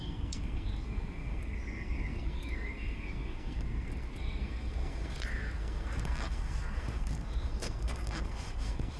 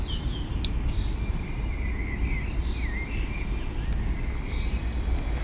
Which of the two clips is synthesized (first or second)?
first